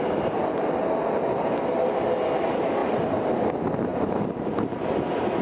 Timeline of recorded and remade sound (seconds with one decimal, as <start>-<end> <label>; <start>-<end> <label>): 0.0-3.9 recorded; 3.9-4.9 remade; 4.9-5.4 recorded